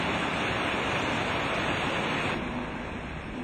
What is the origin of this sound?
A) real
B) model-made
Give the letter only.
A